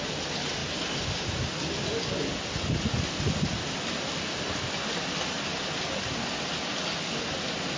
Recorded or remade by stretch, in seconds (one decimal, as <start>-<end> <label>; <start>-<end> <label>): 0.0-7.8 recorded